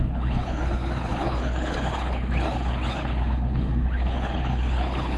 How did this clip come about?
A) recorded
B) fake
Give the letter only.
B